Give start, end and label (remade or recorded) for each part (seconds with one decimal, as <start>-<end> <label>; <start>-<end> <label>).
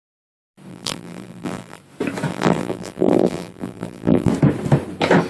0.0-0.7 recorded; 0.7-1.8 remade; 1.8-2.3 recorded; 2.3-4.3 remade; 4.3-5.3 recorded